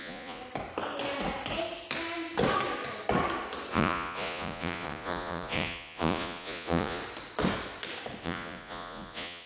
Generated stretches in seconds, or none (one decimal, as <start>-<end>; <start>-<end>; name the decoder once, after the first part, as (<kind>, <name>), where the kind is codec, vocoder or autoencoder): 0.0-0.4 (vocoder, Vocos); 3.7-7.0; 8.2-9.5